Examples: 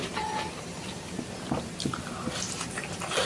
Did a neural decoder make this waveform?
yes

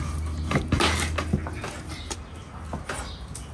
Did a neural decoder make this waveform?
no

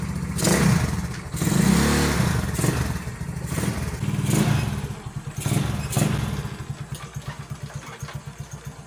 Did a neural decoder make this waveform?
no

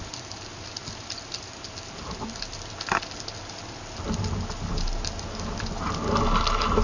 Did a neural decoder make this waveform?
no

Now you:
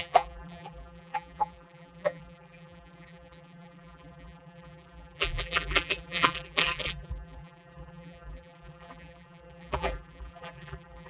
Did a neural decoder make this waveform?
yes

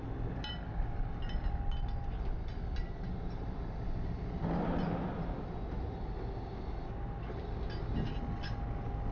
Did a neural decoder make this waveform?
no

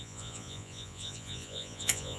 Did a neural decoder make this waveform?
yes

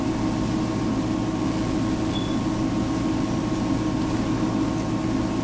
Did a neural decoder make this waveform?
no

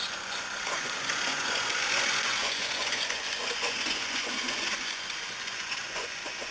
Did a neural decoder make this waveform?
yes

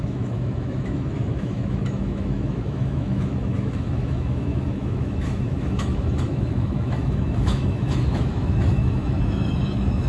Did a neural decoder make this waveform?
yes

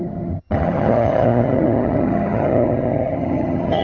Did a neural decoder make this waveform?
yes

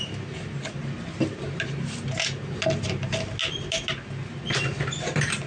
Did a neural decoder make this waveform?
no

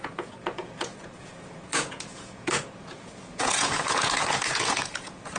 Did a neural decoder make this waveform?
yes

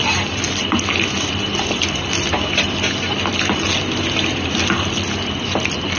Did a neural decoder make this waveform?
no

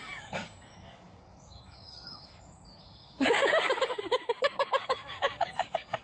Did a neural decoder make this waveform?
yes